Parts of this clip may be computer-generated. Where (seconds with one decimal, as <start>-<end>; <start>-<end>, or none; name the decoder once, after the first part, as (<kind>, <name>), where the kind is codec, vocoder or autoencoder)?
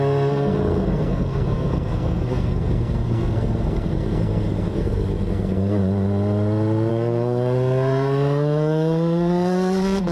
0.0-5.8 (codec, SNAC); 6.9-10.1